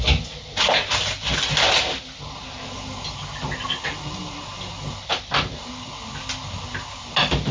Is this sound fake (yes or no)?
no